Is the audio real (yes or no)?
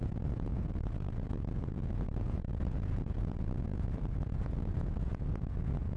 no